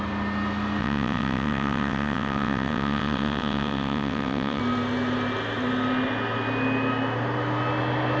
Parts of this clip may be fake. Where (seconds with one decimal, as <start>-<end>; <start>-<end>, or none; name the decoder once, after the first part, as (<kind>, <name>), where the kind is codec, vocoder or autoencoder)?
0.8-4.6 (vocoder, WaveNeXt)

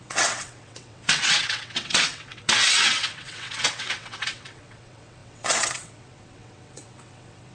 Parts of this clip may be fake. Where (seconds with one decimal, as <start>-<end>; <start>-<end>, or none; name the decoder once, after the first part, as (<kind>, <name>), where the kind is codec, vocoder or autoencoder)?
0.0-7.5 (vocoder, WaveNeXt)

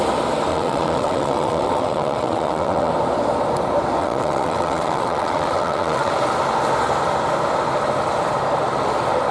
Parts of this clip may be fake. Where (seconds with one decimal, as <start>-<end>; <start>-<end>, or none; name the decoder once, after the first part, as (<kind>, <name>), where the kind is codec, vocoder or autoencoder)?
0.5-2.9 (vocoder, WaveNeXt); 4.0-6.1